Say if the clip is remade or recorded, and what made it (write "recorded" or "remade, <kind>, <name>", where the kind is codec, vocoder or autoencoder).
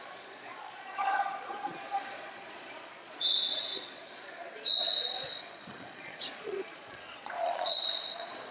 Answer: remade, vocoder, Vocos